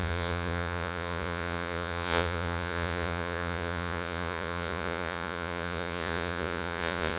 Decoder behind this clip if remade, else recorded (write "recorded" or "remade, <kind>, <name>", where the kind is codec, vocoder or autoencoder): remade, vocoder, Vocos